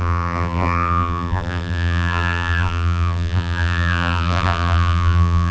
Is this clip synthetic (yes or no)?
yes